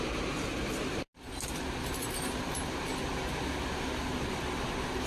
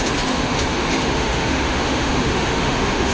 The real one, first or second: first